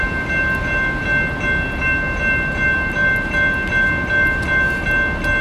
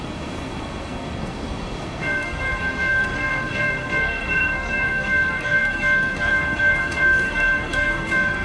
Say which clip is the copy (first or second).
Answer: second